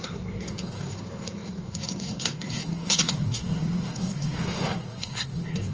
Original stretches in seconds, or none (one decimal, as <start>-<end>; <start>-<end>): none